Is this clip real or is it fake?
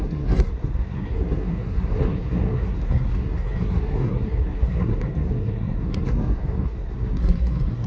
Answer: fake